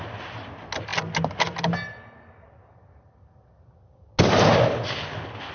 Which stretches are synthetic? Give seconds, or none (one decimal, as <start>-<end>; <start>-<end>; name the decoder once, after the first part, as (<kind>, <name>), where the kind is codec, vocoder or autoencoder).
none